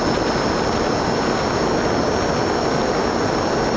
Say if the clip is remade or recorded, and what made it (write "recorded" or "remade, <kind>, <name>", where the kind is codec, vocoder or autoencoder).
recorded